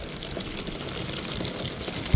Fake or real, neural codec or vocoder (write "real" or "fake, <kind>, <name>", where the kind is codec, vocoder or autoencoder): real